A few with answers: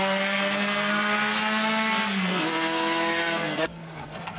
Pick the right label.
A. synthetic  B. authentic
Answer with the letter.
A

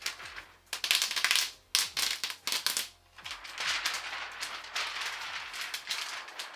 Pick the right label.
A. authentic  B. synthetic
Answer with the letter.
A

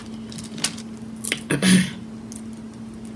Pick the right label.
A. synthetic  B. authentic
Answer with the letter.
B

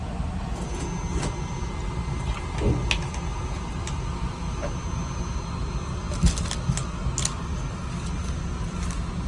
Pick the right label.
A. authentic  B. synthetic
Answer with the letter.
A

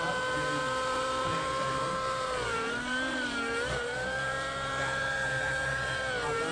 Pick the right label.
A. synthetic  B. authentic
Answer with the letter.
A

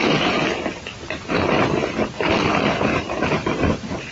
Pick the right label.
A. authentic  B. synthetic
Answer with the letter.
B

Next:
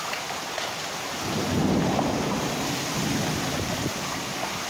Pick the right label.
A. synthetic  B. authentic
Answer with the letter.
B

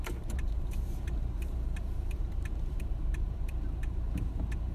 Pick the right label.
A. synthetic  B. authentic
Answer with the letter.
A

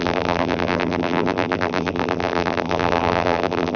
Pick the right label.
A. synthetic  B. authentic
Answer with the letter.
A